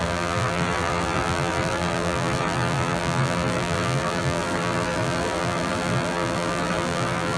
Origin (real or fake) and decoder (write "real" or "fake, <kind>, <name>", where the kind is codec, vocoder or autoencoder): fake, vocoder, BigVGAN v2